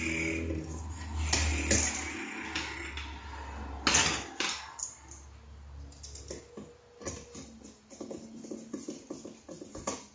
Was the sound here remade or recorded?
recorded